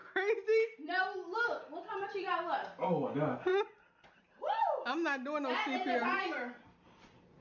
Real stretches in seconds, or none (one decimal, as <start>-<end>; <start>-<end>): 0.0-7.4